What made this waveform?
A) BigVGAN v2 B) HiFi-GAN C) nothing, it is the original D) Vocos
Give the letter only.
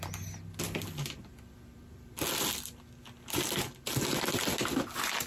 C